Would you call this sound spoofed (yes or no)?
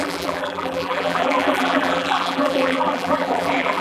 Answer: yes